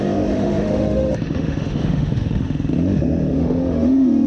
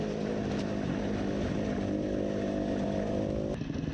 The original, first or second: second